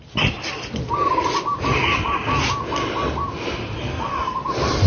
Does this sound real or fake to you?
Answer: real